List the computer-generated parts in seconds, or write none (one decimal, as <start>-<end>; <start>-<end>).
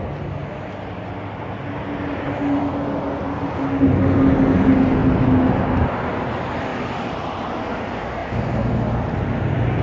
none